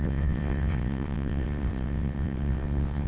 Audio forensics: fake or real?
fake